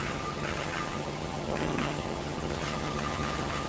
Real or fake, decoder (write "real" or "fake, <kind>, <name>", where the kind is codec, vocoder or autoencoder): fake, vocoder, HiFi-GAN